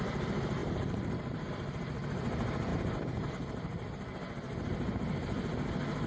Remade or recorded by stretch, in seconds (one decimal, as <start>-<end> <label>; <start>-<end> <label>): 0.0-0.6 recorded; 0.6-1.5 remade; 1.5-2.7 recorded; 2.7-3.3 remade; 3.3-6.1 recorded

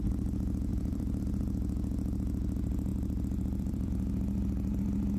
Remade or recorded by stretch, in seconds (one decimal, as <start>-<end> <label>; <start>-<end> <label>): 0.0-0.7 recorded; 0.7-1.2 remade; 1.2-2.9 recorded; 2.9-3.9 remade; 3.9-5.2 recorded

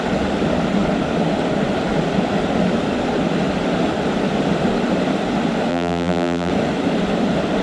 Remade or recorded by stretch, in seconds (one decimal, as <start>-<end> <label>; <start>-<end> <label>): 0.0-5.7 recorded; 5.7-6.5 remade; 6.5-7.6 recorded

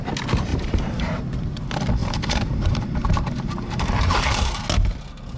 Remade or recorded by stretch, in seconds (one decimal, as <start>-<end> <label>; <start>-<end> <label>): 0.0-0.5 recorded; 0.5-1.2 remade; 1.2-2.0 recorded; 2.0-4.7 remade; 4.7-5.4 recorded

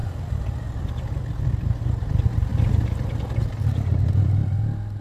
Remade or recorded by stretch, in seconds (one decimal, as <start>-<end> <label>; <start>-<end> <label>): 0.0-5.0 recorded

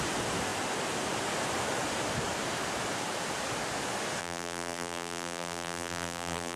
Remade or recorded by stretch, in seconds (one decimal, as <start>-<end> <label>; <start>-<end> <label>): 0.0-4.2 recorded; 4.2-6.6 remade

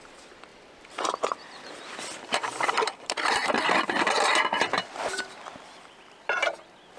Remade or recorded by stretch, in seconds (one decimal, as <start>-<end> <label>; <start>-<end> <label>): 0.0-0.5 recorded; 0.5-3.5 remade; 3.5-7.0 recorded

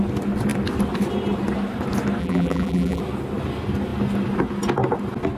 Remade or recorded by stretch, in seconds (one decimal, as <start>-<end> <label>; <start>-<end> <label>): 0.0-2.2 recorded; 2.2-3.0 remade; 3.0-5.4 recorded